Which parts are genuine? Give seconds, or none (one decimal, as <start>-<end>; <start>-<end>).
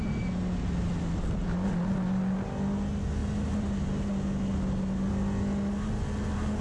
0.0-6.6